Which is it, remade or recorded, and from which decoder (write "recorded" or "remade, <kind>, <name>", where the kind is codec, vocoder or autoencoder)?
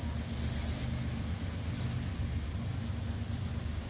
recorded